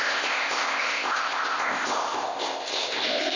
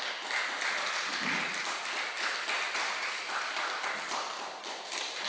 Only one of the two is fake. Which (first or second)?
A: first